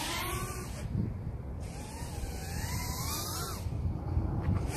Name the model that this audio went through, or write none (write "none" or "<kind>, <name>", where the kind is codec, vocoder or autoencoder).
vocoder, BigVGAN v2